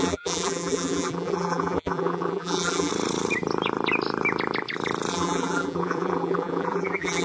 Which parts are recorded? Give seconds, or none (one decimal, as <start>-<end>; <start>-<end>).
2.9-5.1